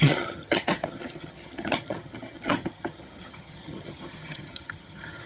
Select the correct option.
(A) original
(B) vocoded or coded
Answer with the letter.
B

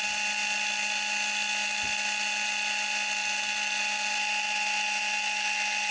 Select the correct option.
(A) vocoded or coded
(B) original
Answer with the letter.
B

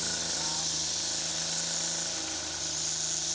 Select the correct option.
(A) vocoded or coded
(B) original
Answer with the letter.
B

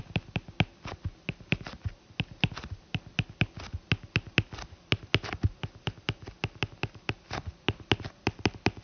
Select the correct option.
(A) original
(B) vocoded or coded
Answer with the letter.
A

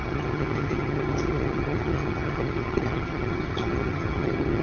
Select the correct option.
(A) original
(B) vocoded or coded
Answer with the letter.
B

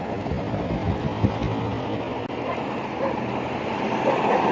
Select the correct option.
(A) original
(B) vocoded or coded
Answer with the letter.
A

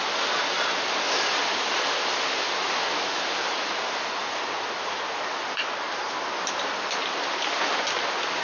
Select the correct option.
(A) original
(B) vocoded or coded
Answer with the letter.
A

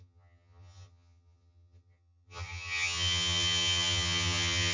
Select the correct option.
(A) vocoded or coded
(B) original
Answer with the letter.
A